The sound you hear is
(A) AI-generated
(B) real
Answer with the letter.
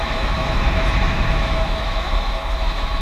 A